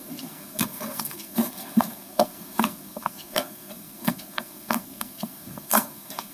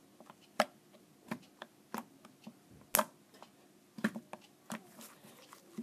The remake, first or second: first